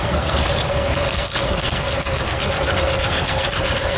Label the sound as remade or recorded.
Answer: remade